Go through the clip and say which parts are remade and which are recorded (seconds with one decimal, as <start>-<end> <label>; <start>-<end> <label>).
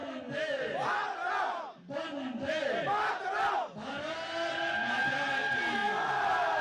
0.0-6.6 recorded